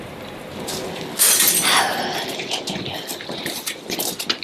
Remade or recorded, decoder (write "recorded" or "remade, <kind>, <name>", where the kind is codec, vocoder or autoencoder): recorded